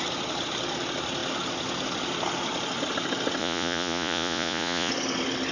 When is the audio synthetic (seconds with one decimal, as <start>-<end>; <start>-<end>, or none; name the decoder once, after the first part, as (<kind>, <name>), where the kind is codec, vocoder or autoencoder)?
3.4-4.9 (vocoder, Vocos)

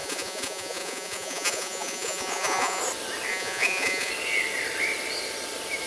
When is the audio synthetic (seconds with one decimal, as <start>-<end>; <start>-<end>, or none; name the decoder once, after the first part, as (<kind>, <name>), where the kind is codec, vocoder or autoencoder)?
0.0-2.8 (vocoder, Vocos); 3.3-4.1

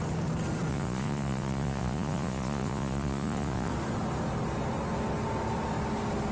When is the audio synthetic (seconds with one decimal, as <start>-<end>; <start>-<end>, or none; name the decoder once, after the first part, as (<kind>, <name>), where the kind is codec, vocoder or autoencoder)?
0.7-3.7 (vocoder, Vocos)

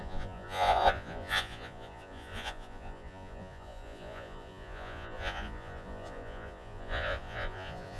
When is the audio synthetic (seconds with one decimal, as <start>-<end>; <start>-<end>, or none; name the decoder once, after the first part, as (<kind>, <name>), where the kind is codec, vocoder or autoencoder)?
0.0-8.0 (vocoder, Vocos)

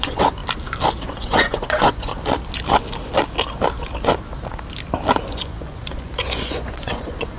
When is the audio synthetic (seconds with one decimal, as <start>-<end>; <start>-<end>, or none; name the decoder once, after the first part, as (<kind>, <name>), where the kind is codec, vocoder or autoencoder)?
0.0-0.4 (vocoder, Vocos); 1.0-2.1; 5.3-7.4

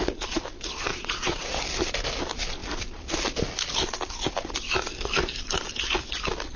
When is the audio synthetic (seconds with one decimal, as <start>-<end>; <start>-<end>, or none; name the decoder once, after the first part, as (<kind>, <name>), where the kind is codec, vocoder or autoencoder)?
0.9-1.6 (vocoder, Vocos)